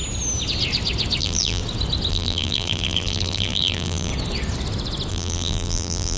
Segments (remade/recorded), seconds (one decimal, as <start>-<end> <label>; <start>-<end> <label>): 0.0-1.2 recorded; 1.2-1.6 remade; 1.6-2.1 recorded; 2.1-4.1 remade; 4.1-5.1 recorded; 5.1-6.2 remade